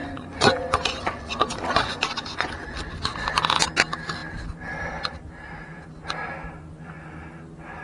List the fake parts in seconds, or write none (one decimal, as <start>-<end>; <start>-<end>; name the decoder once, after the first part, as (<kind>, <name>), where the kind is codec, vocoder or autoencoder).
0.0-2.8 (vocoder, Vocos)